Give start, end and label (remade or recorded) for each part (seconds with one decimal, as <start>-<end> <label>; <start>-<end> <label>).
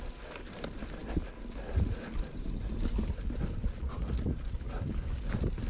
0.0-5.7 recorded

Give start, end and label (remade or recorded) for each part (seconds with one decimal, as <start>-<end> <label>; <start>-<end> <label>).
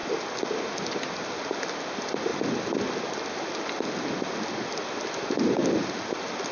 0.0-6.5 recorded